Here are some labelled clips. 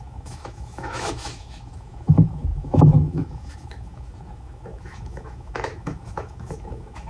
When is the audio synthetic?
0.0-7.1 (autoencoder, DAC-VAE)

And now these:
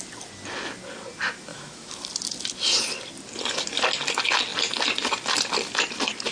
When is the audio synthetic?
1.5-2.1 (autoencoder, DAC-VAE)

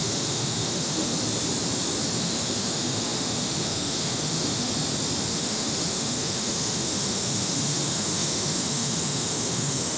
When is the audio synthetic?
0.0-1.1 (autoencoder, DAC-VAE); 2.2-4.7; 5.3-10.0

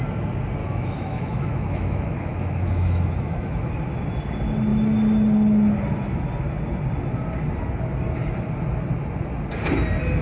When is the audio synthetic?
0.6-3.7 (autoencoder, DAC-VAE)

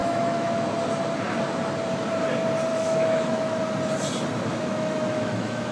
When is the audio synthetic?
0.0-0.5 (autoencoder, DAC-VAE); 2.7-3.6; 4.5-5.7

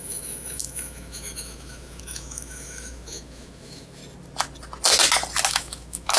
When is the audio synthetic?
0.0-4.0 (autoencoder, DAC-VAE); 5.5-6.2